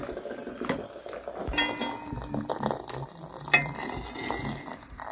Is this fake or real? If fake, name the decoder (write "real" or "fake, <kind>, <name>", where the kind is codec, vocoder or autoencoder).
real